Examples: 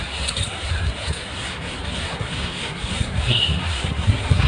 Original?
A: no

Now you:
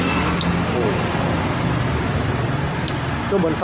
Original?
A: yes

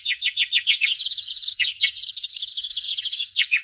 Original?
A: no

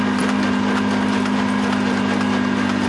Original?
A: yes